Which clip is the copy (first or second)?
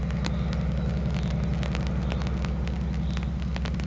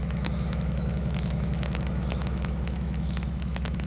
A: second